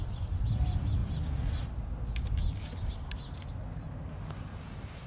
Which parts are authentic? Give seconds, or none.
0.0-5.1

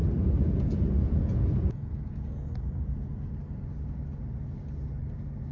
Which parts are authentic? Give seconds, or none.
3.3-5.5

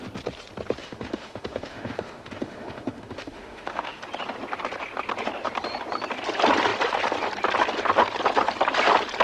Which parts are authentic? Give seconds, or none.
0.0-0.8; 4.0-9.2